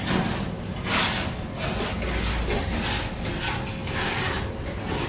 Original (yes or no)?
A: yes